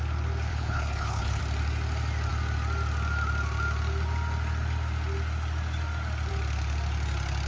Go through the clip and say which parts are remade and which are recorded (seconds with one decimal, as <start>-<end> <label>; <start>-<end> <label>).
0.0-0.5 recorded; 0.5-1.4 remade; 1.4-7.5 recorded